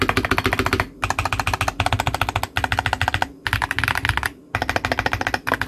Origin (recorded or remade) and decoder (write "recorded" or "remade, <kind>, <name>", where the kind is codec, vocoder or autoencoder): recorded